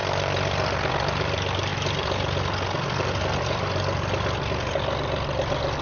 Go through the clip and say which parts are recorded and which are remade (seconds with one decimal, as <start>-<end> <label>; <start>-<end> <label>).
0.0-5.8 recorded